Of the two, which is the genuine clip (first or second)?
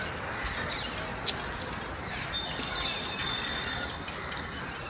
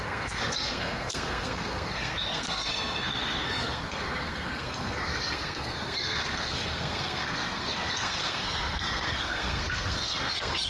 first